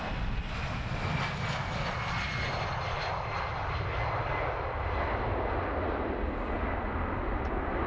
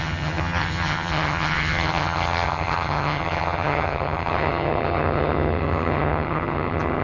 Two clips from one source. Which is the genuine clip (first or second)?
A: first